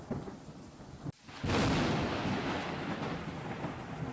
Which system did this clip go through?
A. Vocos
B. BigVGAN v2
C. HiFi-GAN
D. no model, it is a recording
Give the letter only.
D